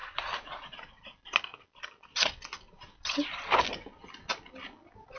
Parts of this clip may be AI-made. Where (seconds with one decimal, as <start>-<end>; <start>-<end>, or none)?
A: none